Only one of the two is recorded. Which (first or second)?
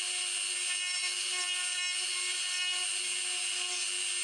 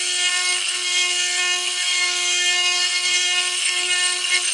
first